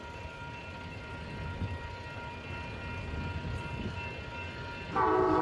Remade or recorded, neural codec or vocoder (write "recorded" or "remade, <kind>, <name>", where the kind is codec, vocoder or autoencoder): recorded